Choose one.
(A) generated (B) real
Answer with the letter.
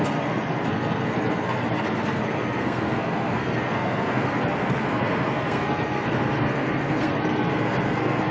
A